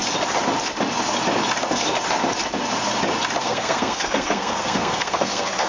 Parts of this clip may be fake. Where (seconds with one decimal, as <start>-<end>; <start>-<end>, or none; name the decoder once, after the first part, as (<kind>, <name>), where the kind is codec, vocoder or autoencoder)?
3.4-5.7 (codec, SNAC)

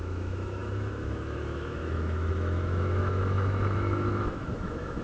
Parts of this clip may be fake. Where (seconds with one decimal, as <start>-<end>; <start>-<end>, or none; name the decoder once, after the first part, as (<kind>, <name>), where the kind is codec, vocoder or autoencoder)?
0.0-5.0 (autoencoder, DAC-VAE)

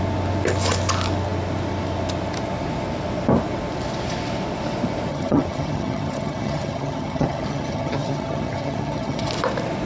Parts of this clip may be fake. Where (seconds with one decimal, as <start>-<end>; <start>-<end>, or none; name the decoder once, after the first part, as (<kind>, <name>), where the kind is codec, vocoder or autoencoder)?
5.1-9.3 (vocoder, HiFi-GAN)